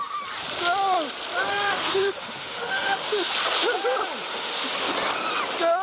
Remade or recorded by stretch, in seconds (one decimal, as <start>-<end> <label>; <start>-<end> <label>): 0.0-1.5 recorded; 1.5-3.3 remade; 3.3-4.3 recorded; 4.3-4.9 remade; 4.9-5.8 recorded